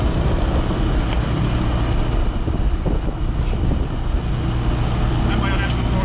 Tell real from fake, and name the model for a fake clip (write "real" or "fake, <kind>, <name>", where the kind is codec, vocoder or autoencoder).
real